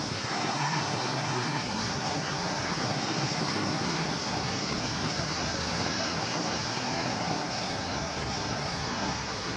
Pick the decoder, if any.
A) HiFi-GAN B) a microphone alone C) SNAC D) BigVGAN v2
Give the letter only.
C